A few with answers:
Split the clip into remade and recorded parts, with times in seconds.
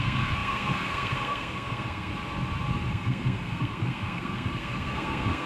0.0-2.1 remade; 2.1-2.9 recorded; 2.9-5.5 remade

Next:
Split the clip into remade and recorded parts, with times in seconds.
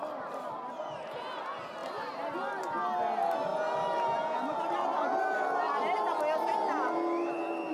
0.0-7.7 recorded